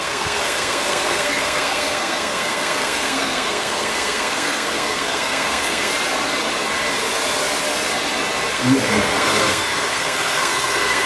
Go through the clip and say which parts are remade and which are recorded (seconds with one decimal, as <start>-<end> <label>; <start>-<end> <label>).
0.0-5.9 remade; 5.9-8.5 recorded; 8.5-11.1 remade